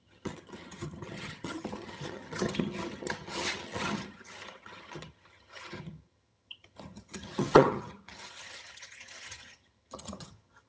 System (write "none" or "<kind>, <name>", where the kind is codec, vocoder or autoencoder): vocoder, HiFi-GAN